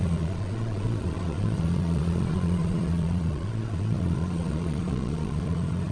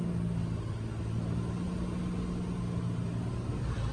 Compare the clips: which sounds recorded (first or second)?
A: second